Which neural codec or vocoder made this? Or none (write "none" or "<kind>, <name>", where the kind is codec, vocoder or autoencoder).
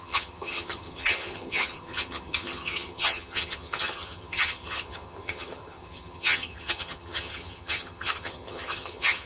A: vocoder, HiFi-GAN